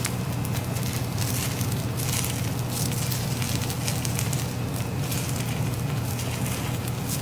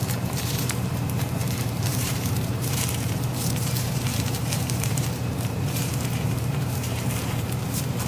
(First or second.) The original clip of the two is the first